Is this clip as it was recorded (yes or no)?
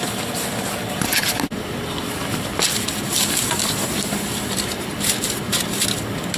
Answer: yes